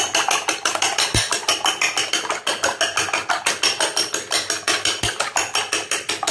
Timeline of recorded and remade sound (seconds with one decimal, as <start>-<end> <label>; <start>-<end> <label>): 0.0-6.3 recorded